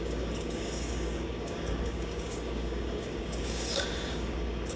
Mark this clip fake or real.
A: fake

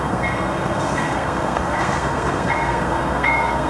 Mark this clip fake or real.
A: fake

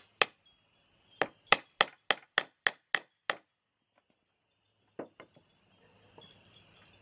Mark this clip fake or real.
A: real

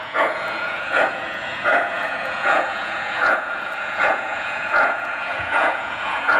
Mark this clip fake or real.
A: fake